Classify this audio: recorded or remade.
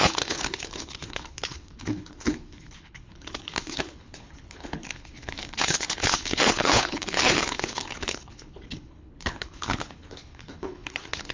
remade